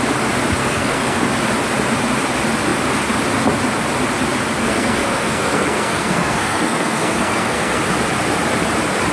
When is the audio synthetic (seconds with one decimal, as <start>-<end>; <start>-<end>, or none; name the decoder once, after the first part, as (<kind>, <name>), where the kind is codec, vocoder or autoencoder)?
0.6-1.2 (codec, SNAC); 4.6-7.8